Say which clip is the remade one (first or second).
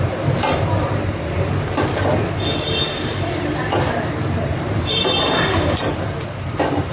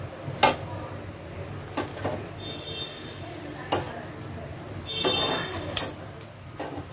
first